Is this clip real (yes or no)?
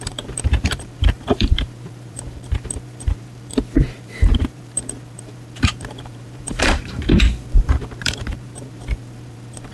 no